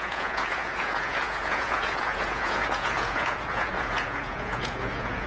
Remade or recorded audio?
remade